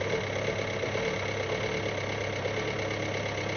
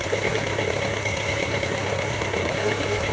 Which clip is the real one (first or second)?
first